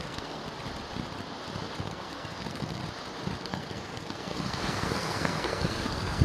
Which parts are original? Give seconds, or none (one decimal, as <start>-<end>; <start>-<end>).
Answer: 0.4-1.8; 2.8-3.4